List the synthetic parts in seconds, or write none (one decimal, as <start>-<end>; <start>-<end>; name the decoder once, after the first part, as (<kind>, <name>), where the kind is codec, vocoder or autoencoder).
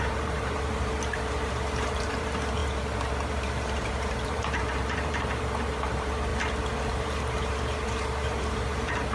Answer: 0.0-6.3 (vocoder, BigVGAN v2); 6.9-9.1